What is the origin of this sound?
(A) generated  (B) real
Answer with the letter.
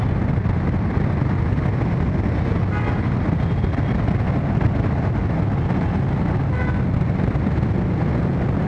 B